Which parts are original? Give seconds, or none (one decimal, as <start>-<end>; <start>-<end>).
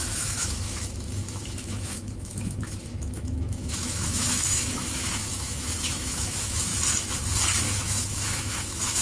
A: 6.7-7.6